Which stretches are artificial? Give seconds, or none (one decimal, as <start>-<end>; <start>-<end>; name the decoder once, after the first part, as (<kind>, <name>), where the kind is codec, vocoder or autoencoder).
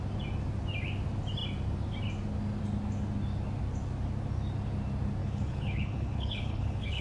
5.2-7.0 (codec, HILCodec)